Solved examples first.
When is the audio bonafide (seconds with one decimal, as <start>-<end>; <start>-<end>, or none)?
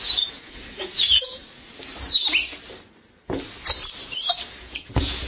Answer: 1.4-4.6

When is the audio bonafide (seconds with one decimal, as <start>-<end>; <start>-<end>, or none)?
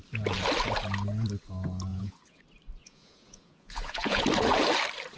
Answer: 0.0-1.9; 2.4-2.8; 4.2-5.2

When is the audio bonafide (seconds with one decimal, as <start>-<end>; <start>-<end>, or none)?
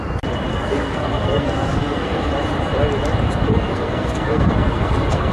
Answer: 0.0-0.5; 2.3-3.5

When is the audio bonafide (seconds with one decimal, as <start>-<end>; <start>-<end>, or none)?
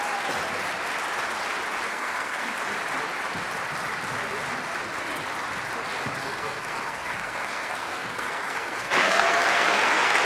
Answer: 0.0-1.9; 2.6-6.2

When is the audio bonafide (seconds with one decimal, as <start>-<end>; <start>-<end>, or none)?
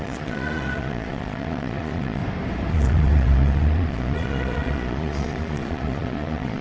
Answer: 2.2-2.7